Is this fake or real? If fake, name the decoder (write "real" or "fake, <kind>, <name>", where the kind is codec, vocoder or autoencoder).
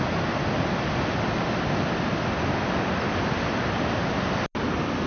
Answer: real